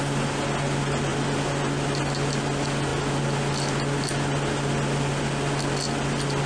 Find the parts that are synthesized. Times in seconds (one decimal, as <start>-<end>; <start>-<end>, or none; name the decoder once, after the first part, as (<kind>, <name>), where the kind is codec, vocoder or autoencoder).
none